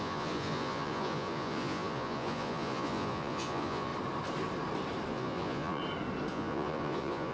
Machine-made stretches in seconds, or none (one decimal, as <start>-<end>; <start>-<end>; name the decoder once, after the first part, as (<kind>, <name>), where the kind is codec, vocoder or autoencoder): 0.0-3.9 (vocoder, Vocos); 5.1-5.8; 6.3-7.3

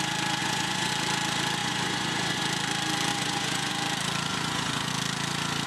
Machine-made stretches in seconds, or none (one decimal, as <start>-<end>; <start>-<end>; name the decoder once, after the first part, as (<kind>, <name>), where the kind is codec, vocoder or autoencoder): 0.4-0.9 (vocoder, Vocos); 1.6-2.4; 3.1-3.7; 4.3-4.9

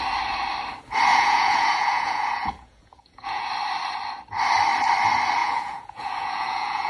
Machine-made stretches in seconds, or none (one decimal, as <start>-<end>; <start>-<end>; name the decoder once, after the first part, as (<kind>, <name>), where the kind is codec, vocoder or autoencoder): 1.1-3.5 (vocoder, Vocos); 5.4-6.9